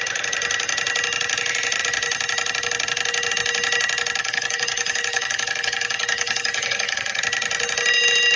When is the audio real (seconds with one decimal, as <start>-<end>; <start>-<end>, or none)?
0.0-4.2; 7.2-8.4